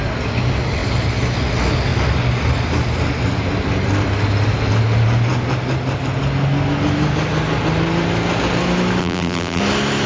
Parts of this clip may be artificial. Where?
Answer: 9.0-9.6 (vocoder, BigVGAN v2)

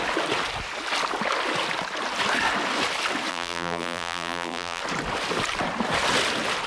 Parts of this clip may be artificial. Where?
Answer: 3.3-4.8 (vocoder, BigVGAN v2)

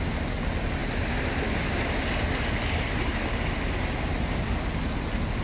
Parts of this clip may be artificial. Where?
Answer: none